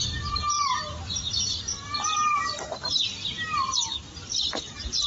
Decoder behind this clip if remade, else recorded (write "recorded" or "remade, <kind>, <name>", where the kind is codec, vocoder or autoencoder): remade, vocoder, BigVGAN v2